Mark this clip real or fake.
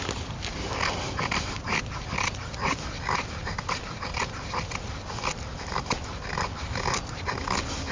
real